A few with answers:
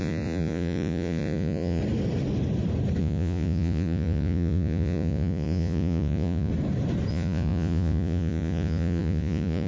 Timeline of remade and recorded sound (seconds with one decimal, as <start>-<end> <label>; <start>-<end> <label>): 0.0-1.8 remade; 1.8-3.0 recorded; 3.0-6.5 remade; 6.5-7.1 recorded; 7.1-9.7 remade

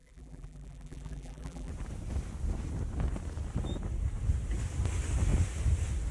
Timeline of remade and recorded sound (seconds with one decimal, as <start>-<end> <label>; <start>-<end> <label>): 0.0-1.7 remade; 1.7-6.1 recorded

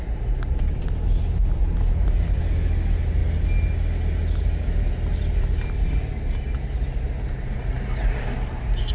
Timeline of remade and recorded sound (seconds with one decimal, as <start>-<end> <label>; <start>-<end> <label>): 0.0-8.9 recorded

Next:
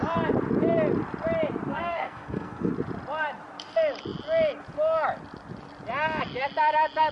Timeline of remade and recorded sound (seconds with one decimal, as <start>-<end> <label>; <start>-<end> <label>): 0.0-1.7 recorded; 1.7-2.7 remade; 2.7-7.1 recorded

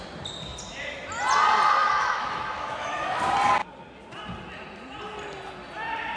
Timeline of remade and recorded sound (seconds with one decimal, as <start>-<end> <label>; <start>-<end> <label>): 0.0-1.8 recorded; 1.8-3.2 remade; 3.2-6.2 recorded